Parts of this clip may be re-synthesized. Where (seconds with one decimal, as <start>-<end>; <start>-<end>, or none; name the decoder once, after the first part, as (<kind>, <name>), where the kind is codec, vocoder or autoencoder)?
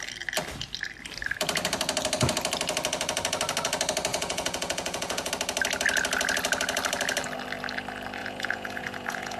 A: 4.1-5.3 (vocoder, Vocos); 8.2-9.4